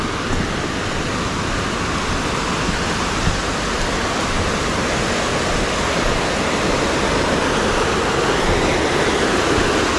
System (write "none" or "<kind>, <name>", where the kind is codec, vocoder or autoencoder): none